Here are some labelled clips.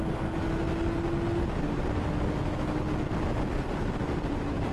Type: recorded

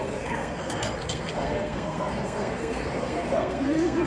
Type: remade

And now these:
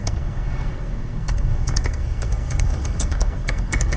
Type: remade